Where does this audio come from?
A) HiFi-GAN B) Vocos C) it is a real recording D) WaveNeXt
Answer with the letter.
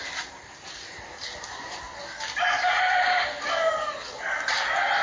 C